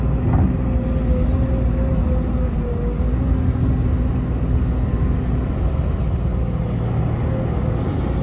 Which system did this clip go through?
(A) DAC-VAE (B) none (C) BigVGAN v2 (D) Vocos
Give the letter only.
B